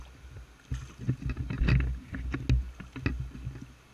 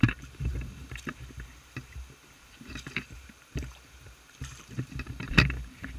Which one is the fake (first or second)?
second